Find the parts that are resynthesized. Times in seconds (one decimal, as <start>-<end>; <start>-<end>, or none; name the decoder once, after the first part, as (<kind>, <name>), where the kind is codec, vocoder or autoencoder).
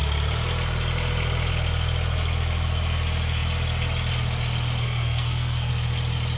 4.8-5.7 (codec, SNAC)